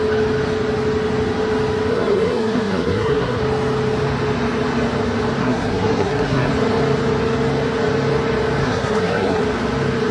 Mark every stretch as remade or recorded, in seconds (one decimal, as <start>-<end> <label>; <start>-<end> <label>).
0.0-1.9 recorded; 1.9-3.4 remade; 3.4-5.4 recorded; 5.4-6.5 remade; 6.5-8.6 recorded; 8.6-9.4 remade; 9.4-10.1 recorded